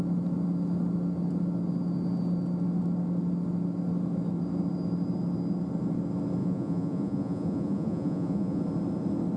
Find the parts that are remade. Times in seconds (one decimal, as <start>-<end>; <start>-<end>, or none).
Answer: 6.4-8.6